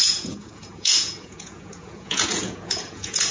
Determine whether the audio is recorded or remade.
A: remade